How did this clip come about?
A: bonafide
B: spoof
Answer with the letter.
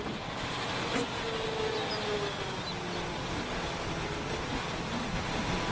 A